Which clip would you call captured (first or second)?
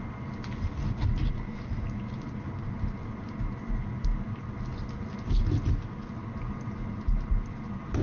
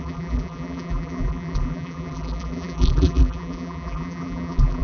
first